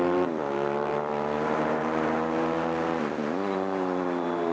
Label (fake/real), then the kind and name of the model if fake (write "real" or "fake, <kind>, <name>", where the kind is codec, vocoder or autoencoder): fake, vocoder, BigVGAN v2